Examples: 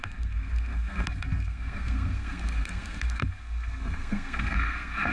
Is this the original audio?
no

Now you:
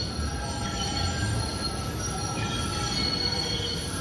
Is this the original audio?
yes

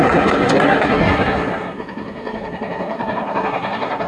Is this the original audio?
no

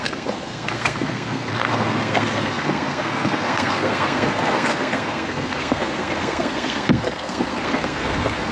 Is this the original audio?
no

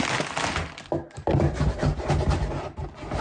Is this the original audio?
yes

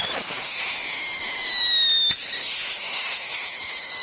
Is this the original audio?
yes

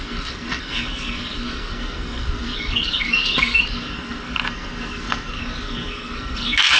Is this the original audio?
no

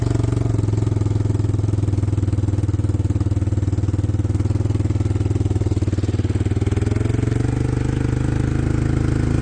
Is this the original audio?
yes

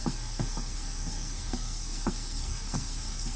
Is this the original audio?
no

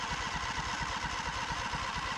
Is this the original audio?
yes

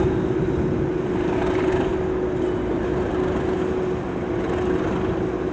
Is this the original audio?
yes